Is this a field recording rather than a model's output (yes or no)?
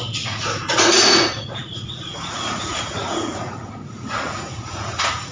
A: no